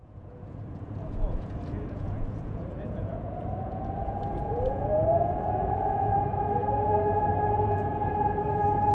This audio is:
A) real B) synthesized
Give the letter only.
B